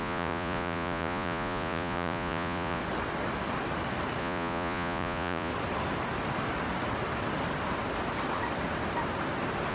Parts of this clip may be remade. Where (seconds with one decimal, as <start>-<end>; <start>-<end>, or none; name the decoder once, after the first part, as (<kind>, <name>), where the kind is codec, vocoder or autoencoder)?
0.0-2.8 (vocoder, Vocos); 4.2-5.5